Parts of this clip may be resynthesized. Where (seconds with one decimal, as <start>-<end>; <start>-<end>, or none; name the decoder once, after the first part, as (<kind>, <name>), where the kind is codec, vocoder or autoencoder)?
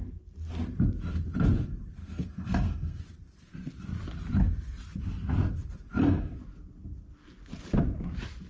2.0-3.0 (codec, SNAC)